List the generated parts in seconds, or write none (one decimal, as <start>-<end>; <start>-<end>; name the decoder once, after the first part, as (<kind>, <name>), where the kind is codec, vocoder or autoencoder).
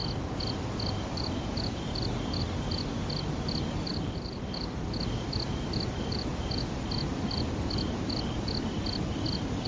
none